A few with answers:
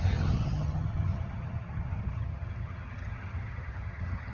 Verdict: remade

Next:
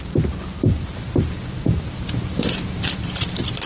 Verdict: remade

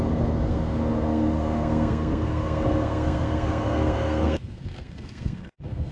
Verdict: remade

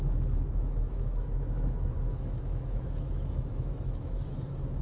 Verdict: remade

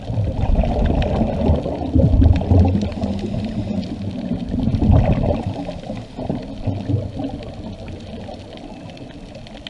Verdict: recorded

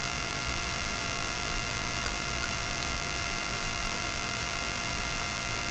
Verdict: remade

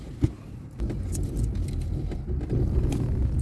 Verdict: recorded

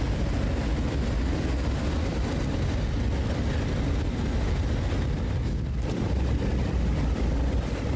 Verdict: recorded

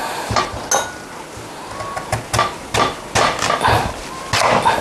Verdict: recorded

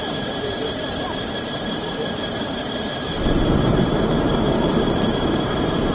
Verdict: remade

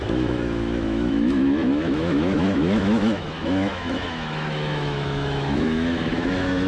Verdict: remade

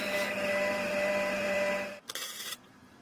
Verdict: remade